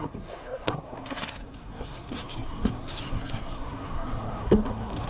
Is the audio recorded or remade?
remade